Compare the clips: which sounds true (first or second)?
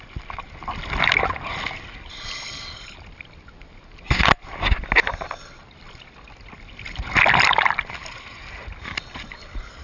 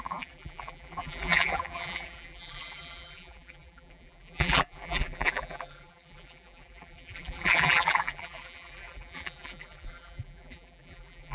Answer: first